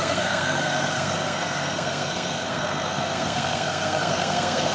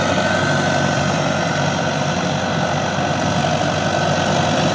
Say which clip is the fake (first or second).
first